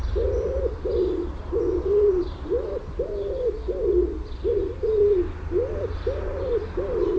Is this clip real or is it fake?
fake